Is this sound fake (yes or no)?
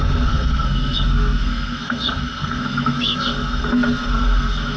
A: yes